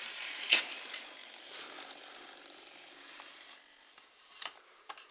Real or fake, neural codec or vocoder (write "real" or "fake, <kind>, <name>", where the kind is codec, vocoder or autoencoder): fake, vocoder, BigVGAN v2